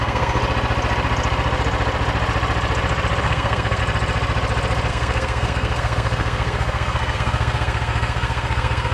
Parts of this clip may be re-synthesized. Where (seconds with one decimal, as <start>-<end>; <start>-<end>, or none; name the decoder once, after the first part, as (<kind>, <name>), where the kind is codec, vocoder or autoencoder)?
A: 0.0-0.4 (codec, SNAC); 3.2-3.8; 4.9-8.9